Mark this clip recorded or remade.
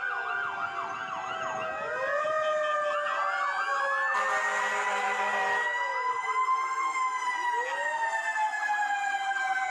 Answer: recorded